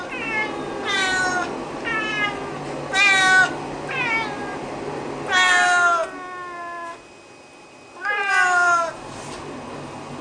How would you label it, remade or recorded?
recorded